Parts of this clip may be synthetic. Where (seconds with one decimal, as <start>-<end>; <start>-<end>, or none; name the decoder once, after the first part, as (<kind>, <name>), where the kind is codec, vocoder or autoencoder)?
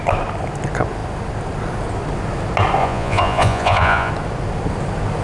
2.8-4.1 (vocoder, Vocos)